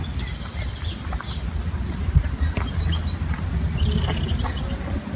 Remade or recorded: recorded